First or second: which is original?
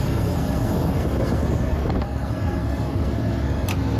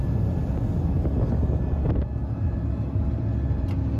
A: second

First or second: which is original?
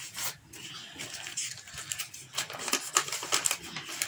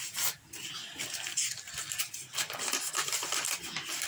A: first